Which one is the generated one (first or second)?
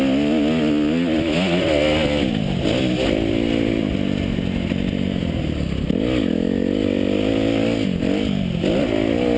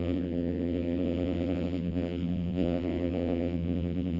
second